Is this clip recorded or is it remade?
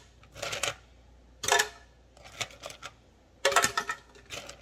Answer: recorded